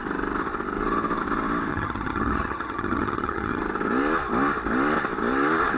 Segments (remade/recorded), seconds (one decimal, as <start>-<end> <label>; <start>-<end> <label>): 0.0-1.7 recorded; 1.7-3.6 remade; 3.6-5.8 recorded